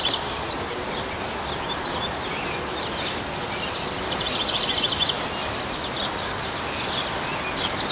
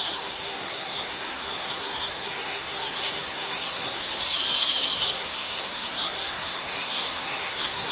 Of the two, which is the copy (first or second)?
second